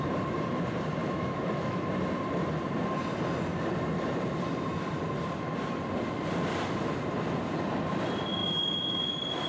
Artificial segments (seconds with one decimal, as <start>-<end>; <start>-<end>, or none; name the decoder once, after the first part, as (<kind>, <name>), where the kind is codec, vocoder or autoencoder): 1.0-1.9 (autoencoder, DAC-VAE); 8.4-9.0